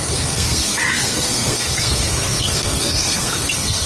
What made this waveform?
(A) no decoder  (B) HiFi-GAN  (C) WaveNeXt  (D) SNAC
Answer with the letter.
D